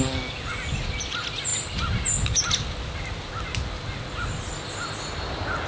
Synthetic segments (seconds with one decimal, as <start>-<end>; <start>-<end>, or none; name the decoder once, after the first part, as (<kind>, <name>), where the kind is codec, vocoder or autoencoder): none